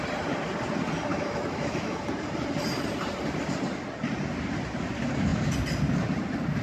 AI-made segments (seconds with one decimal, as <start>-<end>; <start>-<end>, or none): 1.1-2.0